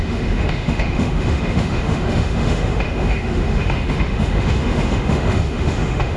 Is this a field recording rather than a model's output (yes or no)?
no